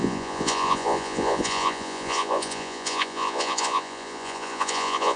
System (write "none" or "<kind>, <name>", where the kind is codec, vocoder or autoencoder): vocoder, Vocos